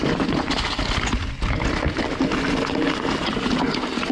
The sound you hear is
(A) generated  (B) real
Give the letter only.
B